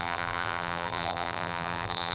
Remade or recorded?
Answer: remade